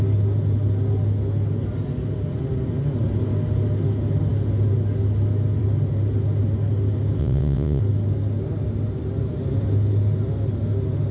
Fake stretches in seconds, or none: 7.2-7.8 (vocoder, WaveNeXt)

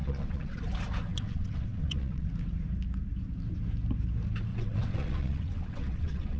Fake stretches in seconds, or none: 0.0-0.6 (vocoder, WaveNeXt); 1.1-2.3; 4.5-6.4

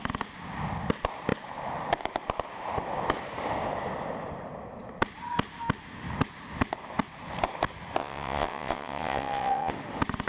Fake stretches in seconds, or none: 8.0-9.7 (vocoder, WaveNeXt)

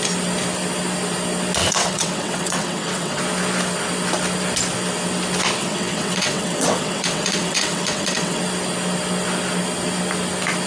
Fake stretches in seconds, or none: 1.6-3.2 (vocoder, WaveNeXt); 5.6-8.4

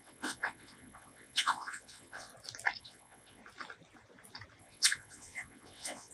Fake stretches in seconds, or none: 0.0-2.3 (vocoder, WaveNeXt); 2.8-3.4; 4.6-6.1